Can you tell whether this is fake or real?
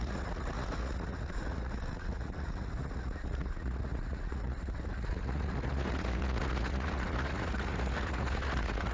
fake